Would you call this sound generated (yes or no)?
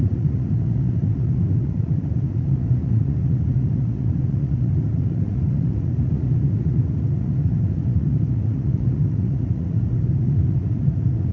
yes